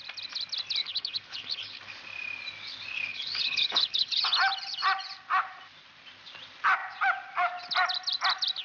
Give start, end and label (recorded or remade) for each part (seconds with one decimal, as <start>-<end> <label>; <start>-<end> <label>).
0.0-0.8 recorded; 0.8-1.8 remade; 1.8-3.1 recorded; 3.1-4.2 remade; 4.2-8.6 recorded

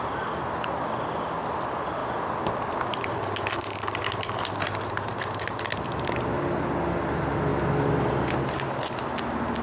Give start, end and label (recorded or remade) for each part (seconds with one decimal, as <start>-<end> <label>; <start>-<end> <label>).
0.0-9.6 recorded

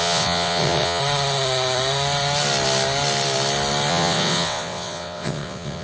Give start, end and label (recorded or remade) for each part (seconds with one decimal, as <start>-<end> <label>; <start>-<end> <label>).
0.0-1.0 remade; 1.0-3.9 recorded; 3.9-5.8 remade

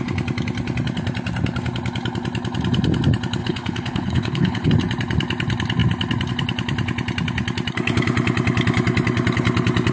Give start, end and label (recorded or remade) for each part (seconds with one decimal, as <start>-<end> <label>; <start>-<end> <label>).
0.0-3.4 recorded; 3.4-4.7 remade; 4.7-9.9 recorded

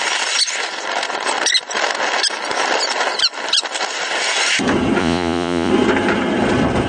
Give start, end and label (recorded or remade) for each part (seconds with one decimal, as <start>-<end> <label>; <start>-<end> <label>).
0.0-5.0 recorded; 5.0-5.7 remade; 5.7-6.9 recorded

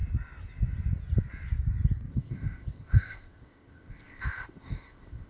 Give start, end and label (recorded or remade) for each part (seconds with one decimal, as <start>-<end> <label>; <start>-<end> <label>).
0.0-2.1 recorded; 2.1-5.3 remade